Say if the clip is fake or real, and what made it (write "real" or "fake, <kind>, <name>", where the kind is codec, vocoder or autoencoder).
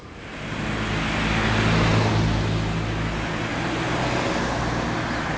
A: real